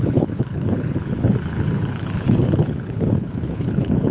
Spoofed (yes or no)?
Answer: yes